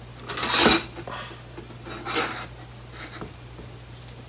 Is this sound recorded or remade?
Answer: recorded